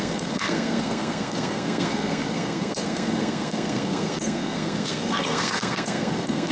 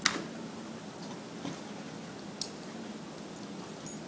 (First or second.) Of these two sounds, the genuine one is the second